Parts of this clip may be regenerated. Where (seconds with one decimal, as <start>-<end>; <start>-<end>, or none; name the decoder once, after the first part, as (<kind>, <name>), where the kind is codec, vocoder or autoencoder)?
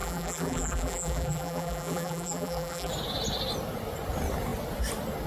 0.0-2.9 (vocoder, BigVGAN v2)